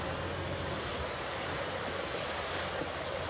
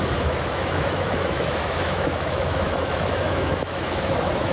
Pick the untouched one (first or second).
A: first